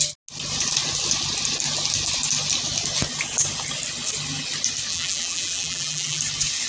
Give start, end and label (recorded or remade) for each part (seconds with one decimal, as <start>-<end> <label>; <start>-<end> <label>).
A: 0.0-4.9 recorded; 4.9-6.2 remade; 6.2-6.7 recorded